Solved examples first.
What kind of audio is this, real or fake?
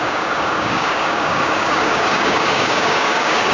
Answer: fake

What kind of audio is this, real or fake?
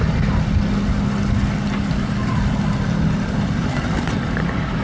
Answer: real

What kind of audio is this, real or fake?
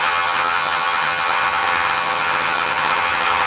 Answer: fake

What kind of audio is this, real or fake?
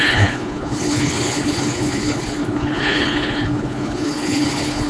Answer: fake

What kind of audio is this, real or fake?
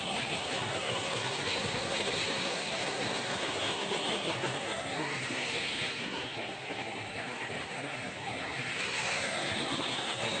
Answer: fake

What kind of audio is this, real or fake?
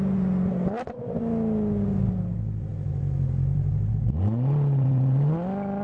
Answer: real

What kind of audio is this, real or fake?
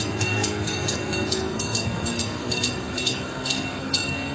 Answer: fake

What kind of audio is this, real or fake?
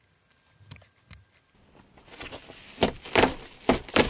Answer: fake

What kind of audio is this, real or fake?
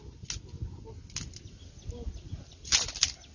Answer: real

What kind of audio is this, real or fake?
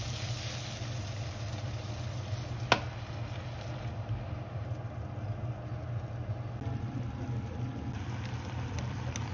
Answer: real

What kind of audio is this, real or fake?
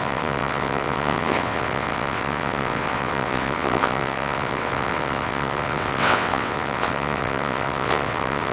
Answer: fake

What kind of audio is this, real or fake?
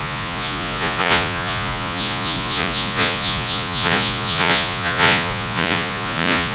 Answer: fake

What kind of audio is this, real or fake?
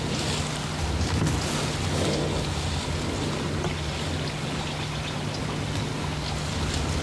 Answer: real